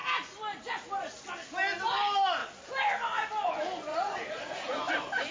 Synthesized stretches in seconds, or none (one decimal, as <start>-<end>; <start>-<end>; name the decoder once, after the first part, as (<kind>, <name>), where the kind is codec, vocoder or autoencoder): 3.9-5.3 (vocoder, Vocos)